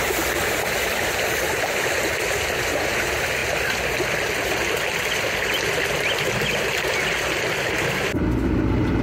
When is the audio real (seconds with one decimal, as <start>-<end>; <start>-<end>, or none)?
0.0-9.0